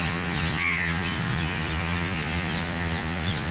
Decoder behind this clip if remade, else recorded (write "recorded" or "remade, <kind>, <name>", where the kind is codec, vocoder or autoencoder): remade, vocoder, Vocos